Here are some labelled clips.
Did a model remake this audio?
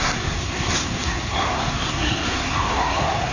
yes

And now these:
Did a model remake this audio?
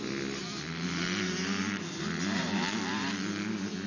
no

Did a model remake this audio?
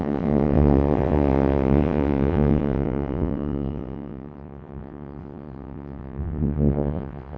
yes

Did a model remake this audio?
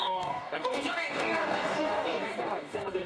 yes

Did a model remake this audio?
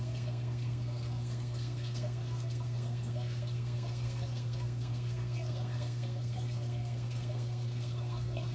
yes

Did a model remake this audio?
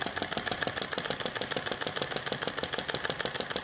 no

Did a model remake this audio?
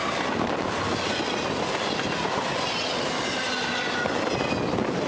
no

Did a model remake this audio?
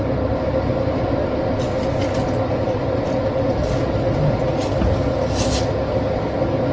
no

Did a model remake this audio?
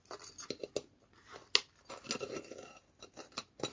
no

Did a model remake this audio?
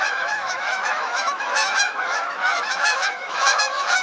yes